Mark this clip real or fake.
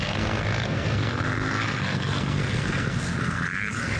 fake